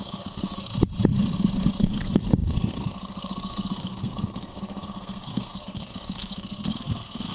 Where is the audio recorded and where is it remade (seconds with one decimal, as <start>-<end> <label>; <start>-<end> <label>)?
0.0-0.7 remade; 0.7-1.8 recorded; 1.8-7.3 remade